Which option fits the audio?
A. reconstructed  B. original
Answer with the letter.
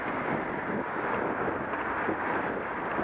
B